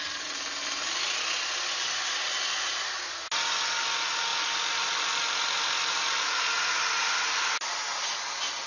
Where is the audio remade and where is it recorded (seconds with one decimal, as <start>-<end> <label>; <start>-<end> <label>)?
0.0-8.7 recorded